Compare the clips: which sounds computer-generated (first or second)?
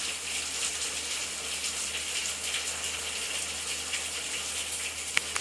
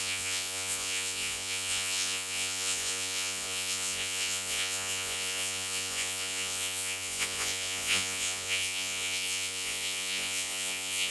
second